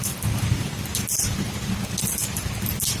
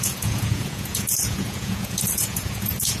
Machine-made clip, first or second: second